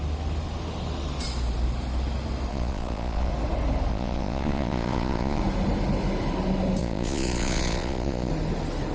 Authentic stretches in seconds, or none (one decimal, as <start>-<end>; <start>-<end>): 0.0-2.5; 3.3-3.9; 5.4-6.8; 8.3-8.9